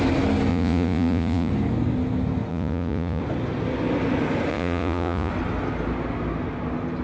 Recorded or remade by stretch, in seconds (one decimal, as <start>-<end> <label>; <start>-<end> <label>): 0.0-0.5 recorded; 0.5-1.5 remade; 1.5-2.5 recorded; 2.5-3.2 remade; 3.2-4.5 recorded; 4.5-5.3 remade; 5.3-7.0 recorded